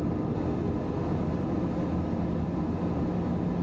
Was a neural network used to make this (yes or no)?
no